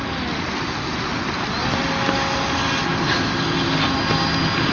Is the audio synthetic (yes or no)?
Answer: no